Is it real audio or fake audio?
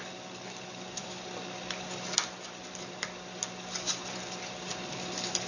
real